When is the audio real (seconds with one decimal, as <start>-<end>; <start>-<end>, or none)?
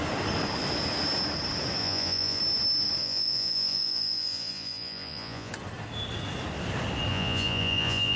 0.0-1.8; 2.4-3.0; 5.5-7.1